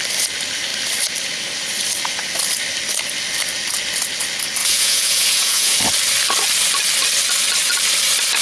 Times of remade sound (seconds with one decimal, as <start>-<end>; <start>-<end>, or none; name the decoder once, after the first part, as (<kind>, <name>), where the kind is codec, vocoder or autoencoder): 4.6-5.8 (vocoder, Vocos)